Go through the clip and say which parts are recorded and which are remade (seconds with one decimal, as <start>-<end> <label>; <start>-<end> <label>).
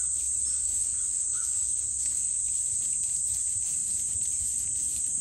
0.0-0.5 recorded; 0.5-2.4 remade; 2.4-5.2 recorded